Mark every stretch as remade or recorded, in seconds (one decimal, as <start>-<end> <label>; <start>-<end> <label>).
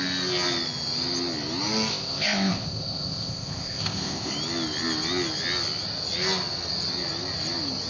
0.0-1.9 recorded; 1.9-4.3 remade; 4.3-7.9 recorded